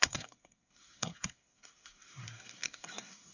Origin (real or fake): fake